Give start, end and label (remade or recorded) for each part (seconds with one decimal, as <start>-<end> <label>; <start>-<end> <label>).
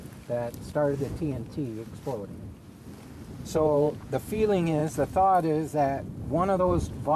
0.0-1.0 recorded; 1.0-1.5 remade; 1.5-3.5 recorded; 3.5-4.8 remade; 4.8-6.6 recorded; 6.6-7.2 remade